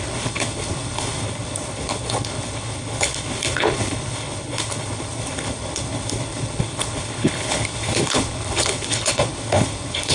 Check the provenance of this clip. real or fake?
fake